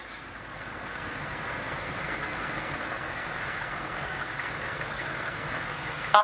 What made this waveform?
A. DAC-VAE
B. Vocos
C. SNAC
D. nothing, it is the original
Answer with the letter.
C